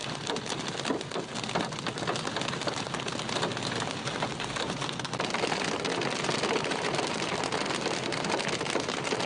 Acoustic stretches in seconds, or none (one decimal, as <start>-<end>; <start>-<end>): 0.0-9.3